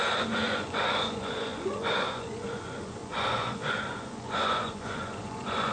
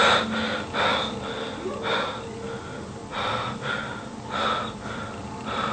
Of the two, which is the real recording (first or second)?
second